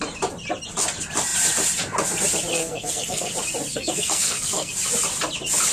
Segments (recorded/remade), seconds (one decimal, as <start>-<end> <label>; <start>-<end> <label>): 0.0-2.5 recorded; 2.5-3.3 remade; 3.3-3.7 recorded; 3.7-4.7 remade; 4.7-5.7 recorded